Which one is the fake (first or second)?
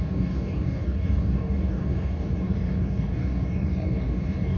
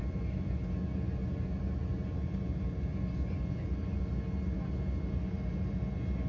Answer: first